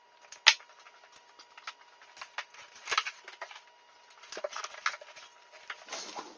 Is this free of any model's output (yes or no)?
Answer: yes